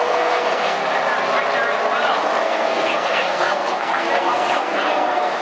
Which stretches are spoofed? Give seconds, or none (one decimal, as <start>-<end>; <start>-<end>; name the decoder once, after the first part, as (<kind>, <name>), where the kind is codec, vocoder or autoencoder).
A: 0.0-0.8 (codec, SNAC); 2.4-5.4